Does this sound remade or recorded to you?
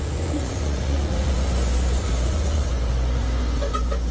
remade